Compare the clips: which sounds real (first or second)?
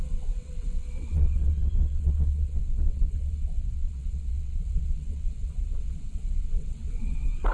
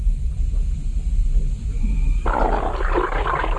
second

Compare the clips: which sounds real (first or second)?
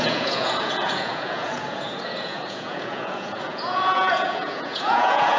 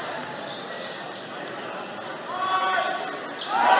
second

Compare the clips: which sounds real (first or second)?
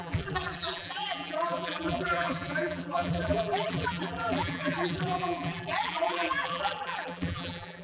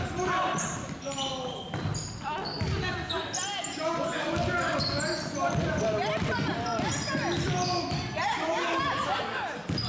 second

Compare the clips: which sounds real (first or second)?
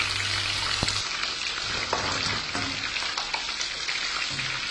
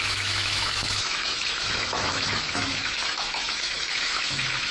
first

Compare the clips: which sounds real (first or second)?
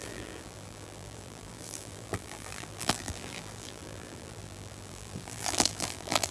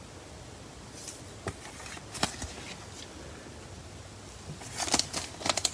second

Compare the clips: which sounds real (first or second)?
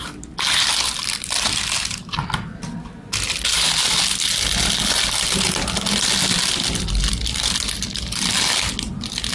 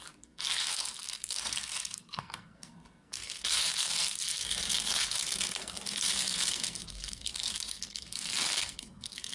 first